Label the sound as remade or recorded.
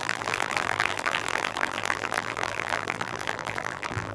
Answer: remade